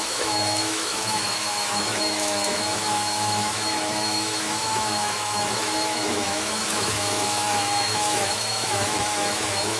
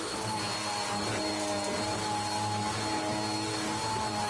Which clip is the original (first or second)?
second